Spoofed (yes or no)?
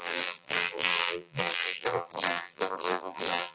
yes